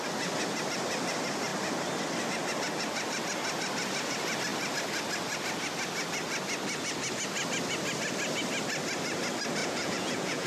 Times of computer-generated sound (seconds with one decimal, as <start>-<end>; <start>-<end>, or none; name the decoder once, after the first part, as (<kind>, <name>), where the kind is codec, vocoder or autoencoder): 9.6-10.5 (vocoder, Vocos)